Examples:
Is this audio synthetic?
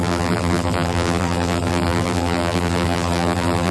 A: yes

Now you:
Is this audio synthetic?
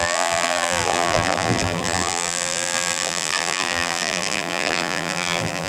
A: yes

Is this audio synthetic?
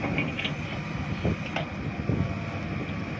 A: no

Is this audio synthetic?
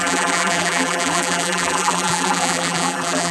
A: yes